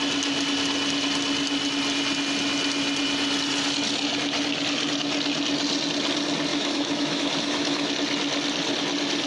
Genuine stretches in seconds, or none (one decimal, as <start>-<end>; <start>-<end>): 0.0-6.5; 7.9-9.3